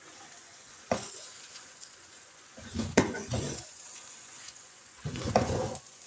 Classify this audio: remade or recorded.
remade